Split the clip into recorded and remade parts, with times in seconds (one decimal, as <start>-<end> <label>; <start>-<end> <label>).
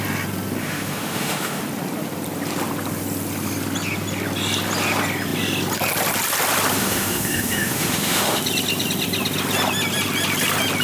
0.0-0.6 recorded; 0.6-1.6 remade; 1.6-6.8 recorded; 6.8-8.4 remade; 8.4-10.8 recorded